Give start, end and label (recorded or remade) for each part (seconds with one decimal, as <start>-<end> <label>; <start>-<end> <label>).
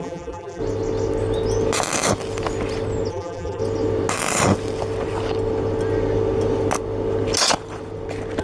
0.0-0.6 remade; 0.6-3.1 recorded; 3.1-3.6 remade; 3.6-8.4 recorded